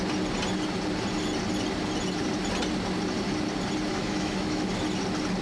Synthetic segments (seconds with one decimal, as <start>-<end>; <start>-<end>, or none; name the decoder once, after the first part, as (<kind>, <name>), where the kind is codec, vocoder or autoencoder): 3.9-4.7 (autoencoder, DAC-VAE)